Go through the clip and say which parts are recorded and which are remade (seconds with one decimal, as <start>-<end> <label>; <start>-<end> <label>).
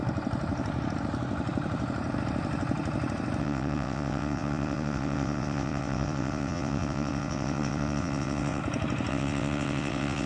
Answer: 0.0-3.4 recorded; 3.4-8.6 remade; 8.6-9.1 recorded; 9.1-10.3 remade